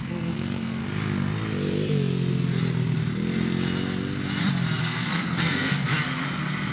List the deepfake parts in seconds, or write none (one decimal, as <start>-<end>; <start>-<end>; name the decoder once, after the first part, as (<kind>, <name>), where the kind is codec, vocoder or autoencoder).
0.0-0.8 (codec, SNAC); 4.8-5.9

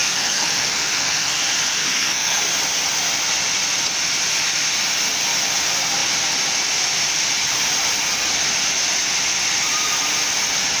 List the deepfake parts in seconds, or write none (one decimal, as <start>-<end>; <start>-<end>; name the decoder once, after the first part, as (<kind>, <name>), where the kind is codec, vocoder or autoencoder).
0.0-1.4 (codec, SNAC); 1.8-2.4

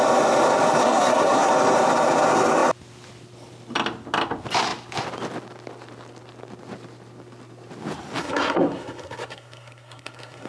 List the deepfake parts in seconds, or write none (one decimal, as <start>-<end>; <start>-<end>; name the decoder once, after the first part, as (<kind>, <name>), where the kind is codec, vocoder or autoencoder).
0.8-1.5 (codec, SNAC); 8.2-10.5

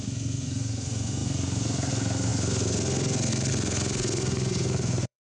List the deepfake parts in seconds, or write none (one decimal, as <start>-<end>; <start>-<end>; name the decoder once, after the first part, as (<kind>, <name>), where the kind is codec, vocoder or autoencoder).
0.0-5.2 (codec, SNAC)

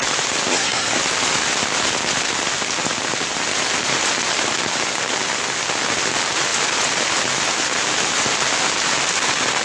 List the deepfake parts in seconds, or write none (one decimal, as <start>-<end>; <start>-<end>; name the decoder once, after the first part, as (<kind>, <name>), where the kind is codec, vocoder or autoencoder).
0.5-1.0 (codec, SNAC)

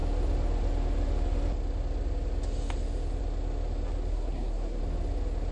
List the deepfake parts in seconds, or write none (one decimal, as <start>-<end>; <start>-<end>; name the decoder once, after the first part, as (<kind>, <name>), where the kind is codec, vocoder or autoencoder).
4.1-4.8 (codec, SNAC)

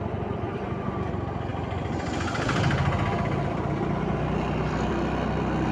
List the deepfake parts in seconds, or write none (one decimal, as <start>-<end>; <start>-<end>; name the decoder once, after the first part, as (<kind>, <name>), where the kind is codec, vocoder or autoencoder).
none

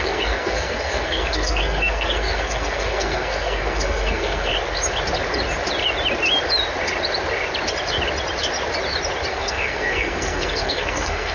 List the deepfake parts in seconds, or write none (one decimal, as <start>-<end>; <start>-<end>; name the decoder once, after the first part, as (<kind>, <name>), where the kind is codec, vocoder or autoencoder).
0.0-4.5 (codec, SNAC); 9.3-11.3